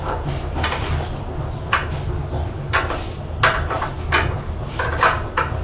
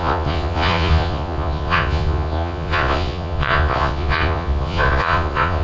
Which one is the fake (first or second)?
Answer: second